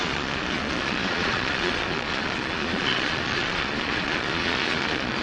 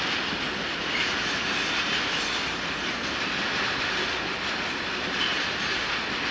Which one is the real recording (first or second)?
second